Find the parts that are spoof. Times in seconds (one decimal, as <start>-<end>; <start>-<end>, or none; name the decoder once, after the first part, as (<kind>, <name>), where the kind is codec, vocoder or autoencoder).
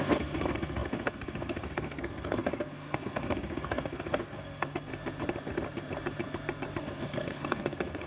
0.0-4.9 (codec, SNAC); 6.8-8.1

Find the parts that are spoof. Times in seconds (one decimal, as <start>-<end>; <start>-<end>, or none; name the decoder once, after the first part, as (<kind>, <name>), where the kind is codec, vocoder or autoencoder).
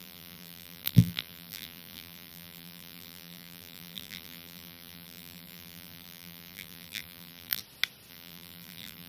0.0-7.6 (vocoder, BigVGAN v2); 8.1-9.1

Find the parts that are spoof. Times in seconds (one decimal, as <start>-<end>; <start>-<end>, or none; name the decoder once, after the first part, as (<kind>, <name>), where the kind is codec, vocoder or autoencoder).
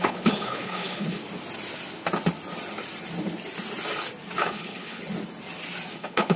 0.0-1.2 (codec, HILCodec); 4.4-5.0; 5.9-6.4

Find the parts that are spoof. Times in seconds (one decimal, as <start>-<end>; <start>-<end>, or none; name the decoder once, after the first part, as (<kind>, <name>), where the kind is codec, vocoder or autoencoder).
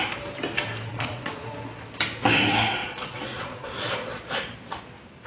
0.9-1.5 (vocoder, Vocos); 2.8-3.7